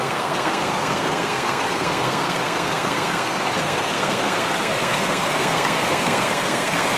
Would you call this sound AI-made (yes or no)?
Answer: yes